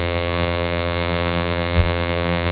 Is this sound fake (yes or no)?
yes